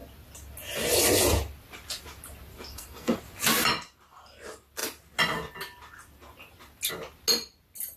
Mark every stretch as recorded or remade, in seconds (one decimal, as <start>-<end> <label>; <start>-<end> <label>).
0.0-2.7 recorded; 2.7-3.2 remade; 3.2-8.0 recorded